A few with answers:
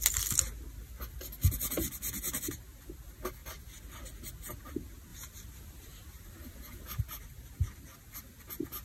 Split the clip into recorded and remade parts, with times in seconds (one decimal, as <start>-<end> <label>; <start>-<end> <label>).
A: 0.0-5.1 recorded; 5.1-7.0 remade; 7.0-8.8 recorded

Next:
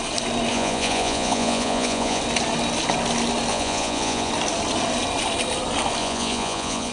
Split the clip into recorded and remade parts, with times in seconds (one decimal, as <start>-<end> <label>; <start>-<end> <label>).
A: 0.0-0.5 recorded; 0.5-2.2 remade; 2.2-3.5 recorded; 3.5-4.3 remade; 4.3-6.0 recorded; 6.0-6.9 remade

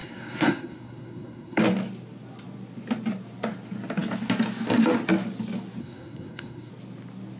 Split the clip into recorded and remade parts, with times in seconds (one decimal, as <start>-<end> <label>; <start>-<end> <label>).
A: 0.0-1.6 remade; 1.6-5.8 recorded; 5.8-6.7 remade; 6.7-7.4 recorded